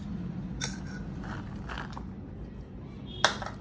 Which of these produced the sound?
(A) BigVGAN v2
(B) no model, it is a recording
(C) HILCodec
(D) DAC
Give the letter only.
B